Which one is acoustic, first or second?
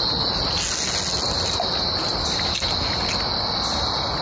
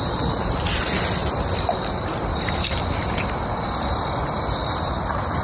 first